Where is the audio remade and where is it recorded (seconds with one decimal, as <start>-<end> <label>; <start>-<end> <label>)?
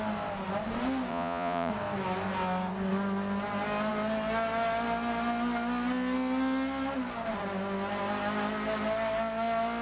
0.0-1.1 recorded; 1.1-1.7 remade; 1.7-9.8 recorded